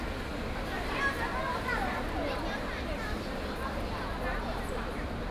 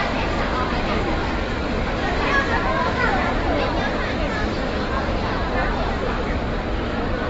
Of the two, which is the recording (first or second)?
first